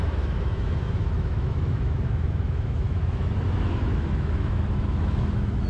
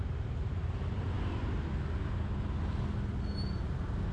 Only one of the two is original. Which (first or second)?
second